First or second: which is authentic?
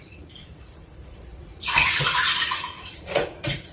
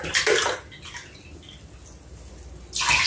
second